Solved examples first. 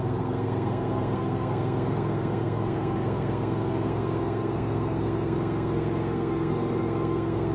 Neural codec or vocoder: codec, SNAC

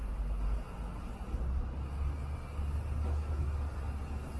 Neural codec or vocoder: none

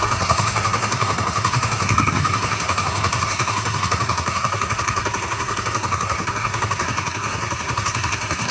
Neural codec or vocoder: codec, SNAC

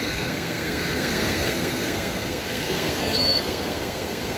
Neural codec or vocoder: codec, SNAC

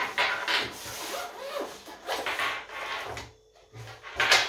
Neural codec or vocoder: none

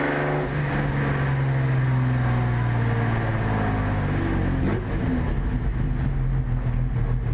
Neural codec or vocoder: none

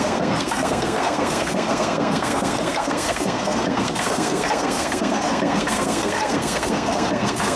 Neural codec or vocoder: codec, SNAC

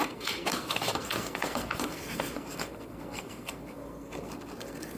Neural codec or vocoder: codec, SNAC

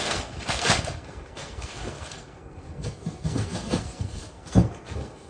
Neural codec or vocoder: codec, SNAC